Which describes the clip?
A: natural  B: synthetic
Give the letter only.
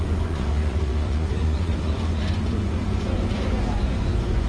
B